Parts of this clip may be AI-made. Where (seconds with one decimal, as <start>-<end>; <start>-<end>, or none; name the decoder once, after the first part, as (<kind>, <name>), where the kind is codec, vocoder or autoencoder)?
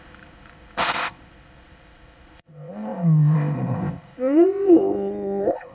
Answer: 0.0-5.7 (codec, ZipCodec)